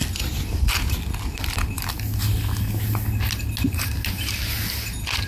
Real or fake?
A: real